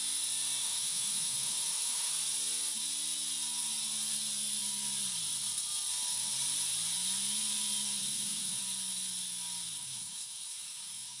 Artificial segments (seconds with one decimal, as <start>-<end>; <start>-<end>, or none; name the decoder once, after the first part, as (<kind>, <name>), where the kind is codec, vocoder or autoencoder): 0.6-2.1 (autoencoder, DAC-VAE); 8.0-8.6; 9.8-11.2